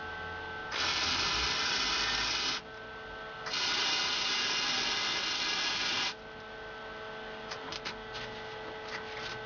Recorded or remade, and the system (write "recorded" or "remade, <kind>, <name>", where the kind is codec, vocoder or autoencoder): recorded